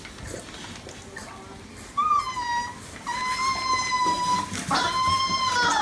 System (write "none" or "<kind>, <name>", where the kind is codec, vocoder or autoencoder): none